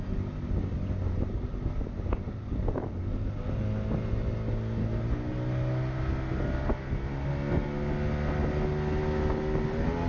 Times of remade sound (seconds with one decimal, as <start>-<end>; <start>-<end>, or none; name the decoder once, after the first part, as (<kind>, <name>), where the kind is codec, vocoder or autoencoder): none